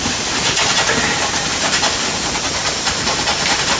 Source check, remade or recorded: recorded